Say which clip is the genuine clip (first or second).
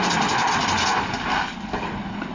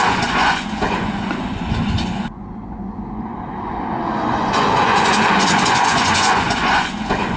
first